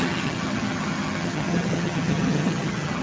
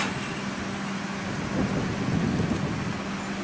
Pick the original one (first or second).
second